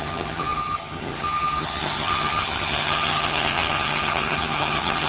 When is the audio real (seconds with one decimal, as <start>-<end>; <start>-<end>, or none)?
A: none